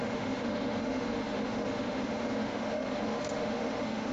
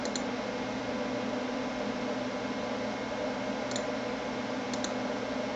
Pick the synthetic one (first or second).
first